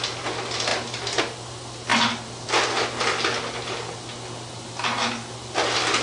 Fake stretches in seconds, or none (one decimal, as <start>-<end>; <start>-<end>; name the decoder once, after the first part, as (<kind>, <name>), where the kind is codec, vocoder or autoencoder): none